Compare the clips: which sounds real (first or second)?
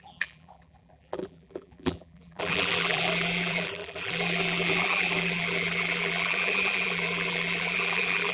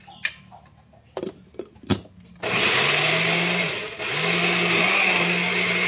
second